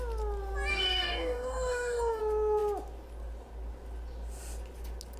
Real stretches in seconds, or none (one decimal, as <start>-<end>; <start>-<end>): 0.0-0.7; 2.2-5.2

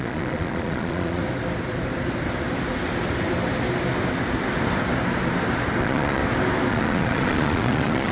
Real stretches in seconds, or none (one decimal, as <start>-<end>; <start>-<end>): 1.2-5.8; 6.2-6.7